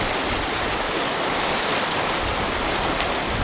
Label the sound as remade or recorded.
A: recorded